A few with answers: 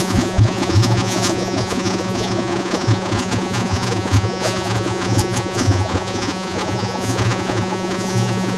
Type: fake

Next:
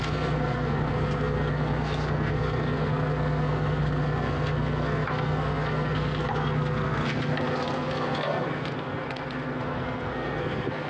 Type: fake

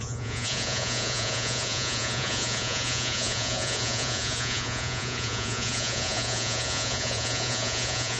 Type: fake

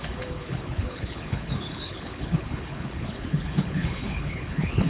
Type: fake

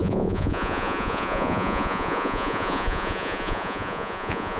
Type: fake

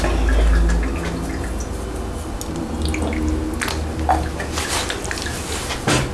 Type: real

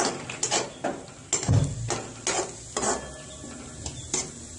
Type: real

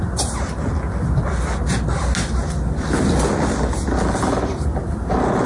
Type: real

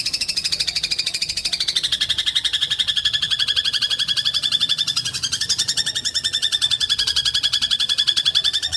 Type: fake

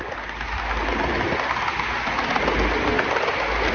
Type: real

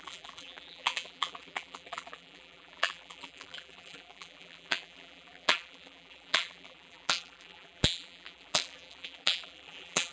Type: fake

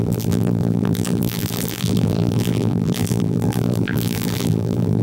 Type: fake